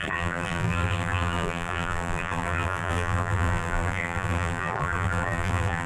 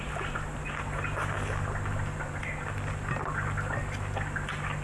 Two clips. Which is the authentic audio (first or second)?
second